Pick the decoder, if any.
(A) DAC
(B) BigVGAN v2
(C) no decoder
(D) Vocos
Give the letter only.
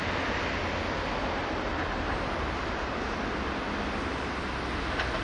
C